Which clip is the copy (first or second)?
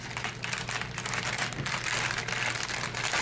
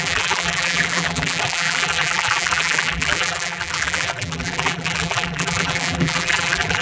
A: second